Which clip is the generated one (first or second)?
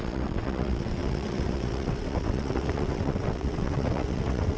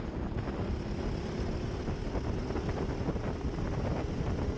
first